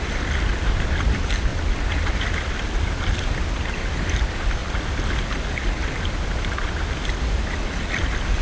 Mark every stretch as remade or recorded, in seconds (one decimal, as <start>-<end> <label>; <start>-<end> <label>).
0.0-8.4 recorded